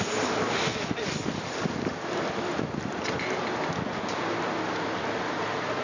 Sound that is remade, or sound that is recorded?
recorded